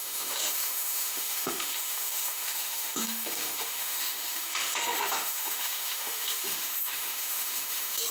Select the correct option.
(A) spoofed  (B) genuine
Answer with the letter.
A